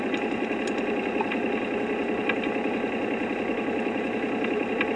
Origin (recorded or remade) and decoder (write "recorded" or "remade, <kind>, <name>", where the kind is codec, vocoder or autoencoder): recorded